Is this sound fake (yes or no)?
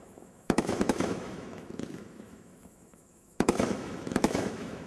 yes